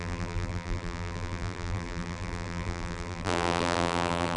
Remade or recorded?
remade